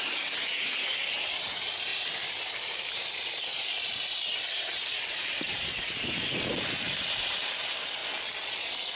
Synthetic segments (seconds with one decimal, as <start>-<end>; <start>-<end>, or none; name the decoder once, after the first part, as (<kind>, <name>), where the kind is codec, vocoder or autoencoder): 0.0-8.0 (vocoder, BigVGAN v2)